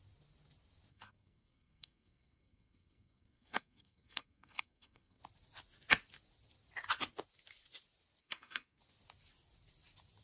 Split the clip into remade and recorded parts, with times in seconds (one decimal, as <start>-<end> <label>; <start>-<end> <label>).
0.0-0.9 recorded; 0.9-5.2 remade; 5.2-8.2 recorded; 8.2-8.8 remade; 8.8-10.2 recorded